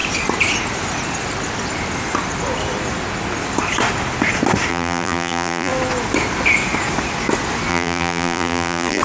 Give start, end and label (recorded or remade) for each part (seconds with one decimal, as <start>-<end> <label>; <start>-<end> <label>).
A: 0.0-4.7 recorded; 4.7-5.7 remade; 5.7-7.7 recorded; 7.7-9.0 remade